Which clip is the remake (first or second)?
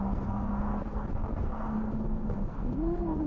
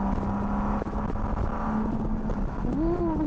first